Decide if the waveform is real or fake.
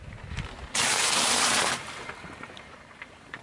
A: fake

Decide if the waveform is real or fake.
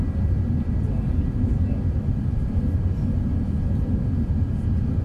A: real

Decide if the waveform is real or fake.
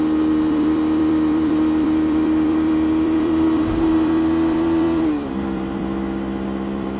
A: fake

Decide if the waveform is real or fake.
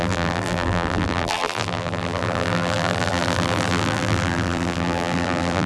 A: fake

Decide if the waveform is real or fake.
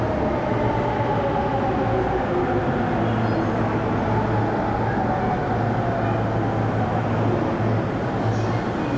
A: real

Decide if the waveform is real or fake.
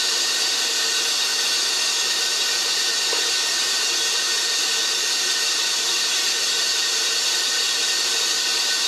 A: fake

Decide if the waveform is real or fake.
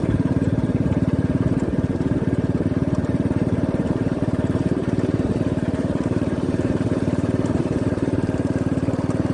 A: fake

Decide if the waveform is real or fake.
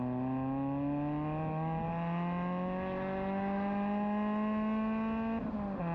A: real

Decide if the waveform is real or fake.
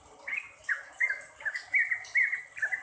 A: fake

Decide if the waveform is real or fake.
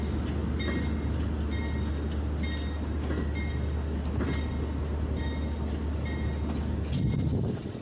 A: real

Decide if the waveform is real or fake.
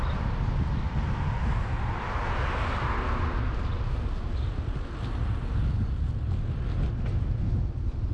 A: real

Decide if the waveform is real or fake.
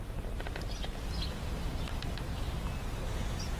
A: real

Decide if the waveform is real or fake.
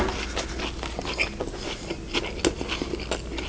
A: real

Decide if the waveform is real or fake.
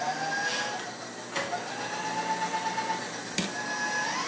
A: real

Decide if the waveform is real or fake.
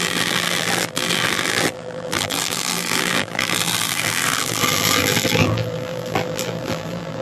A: fake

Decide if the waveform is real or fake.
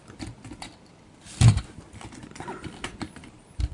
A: fake